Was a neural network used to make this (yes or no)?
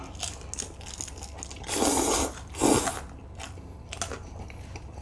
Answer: no